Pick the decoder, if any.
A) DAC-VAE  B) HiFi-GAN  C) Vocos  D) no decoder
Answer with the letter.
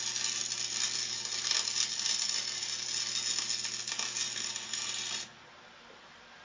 D